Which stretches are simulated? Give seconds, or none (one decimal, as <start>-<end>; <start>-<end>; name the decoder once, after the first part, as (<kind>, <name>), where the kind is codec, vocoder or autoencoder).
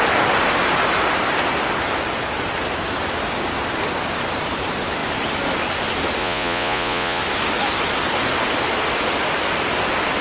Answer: 6.2-7.2 (vocoder, Vocos)